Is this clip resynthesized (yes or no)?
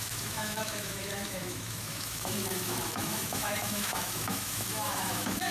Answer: yes